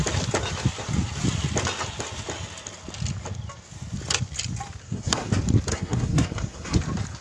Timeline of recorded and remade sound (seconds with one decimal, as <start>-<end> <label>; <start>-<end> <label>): 0.0-4.8 recorded; 4.8-5.3 remade; 5.3-5.7 recorded; 5.7-6.8 remade; 6.8-7.2 recorded